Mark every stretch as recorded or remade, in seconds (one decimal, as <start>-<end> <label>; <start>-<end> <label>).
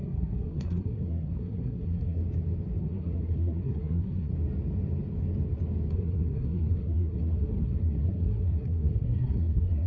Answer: 0.0-2.2 remade; 2.2-2.8 recorded; 2.8-4.3 remade; 4.3-5.9 recorded; 5.9-9.9 remade